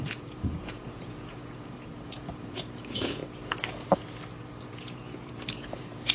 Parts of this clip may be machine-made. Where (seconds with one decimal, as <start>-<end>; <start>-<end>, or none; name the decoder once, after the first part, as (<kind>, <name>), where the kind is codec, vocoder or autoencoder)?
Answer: 0.0-3.2 (vocoder, Vocos); 4.6-6.1